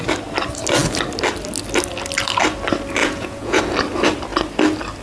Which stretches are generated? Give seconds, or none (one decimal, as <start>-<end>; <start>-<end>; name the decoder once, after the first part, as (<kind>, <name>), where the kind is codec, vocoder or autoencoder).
3.0-3.6 (vocoder, Vocos)